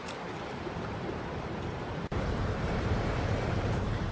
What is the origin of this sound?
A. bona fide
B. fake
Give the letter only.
B